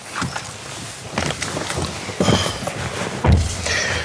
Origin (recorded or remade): recorded